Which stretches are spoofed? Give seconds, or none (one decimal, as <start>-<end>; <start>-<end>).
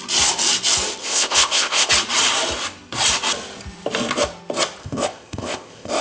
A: 1.0-1.9; 4.8-6.0